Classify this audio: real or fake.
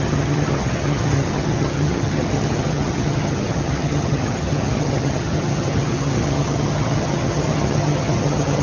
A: fake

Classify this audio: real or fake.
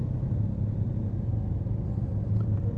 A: real